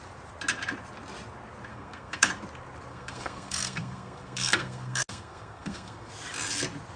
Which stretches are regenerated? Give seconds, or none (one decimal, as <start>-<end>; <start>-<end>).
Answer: 1.7-2.3; 2.9-6.1

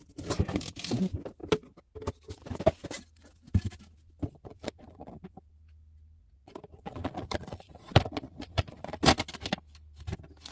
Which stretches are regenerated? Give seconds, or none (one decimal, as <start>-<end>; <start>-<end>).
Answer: 4.4-5.2; 6.2-9.0

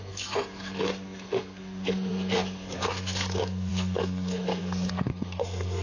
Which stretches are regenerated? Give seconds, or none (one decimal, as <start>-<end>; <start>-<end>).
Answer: 0.0-5.8

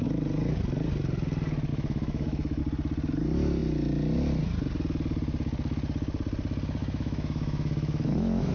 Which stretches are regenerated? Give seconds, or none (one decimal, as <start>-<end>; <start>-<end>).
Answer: 1.7-2.6; 6.8-8.5

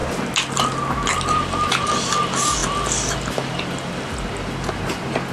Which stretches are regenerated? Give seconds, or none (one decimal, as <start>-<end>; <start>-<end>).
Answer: none

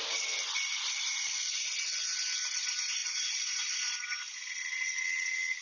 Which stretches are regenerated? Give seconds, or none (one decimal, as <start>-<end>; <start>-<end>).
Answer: 1.1-1.7; 3.0-4.5

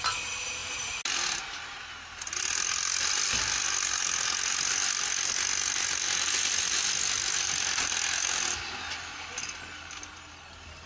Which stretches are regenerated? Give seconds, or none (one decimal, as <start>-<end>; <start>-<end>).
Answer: none

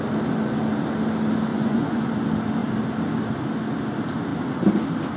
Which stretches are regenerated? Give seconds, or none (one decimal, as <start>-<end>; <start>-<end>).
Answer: 1.5-2.1